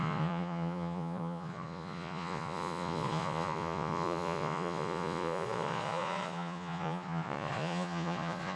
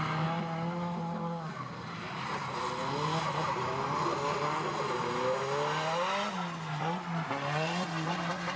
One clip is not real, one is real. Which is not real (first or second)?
first